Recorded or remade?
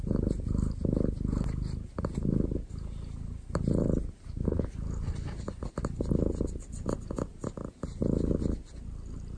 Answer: recorded